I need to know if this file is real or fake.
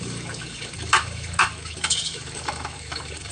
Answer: fake